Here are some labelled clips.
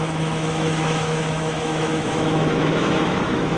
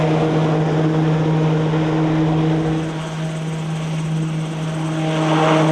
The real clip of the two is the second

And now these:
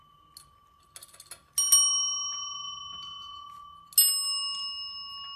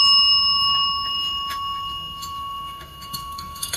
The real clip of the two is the first